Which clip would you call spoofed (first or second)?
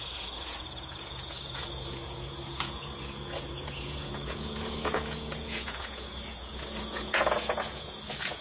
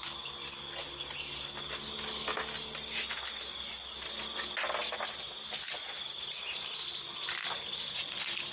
first